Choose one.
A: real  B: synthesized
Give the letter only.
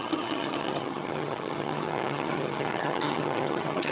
B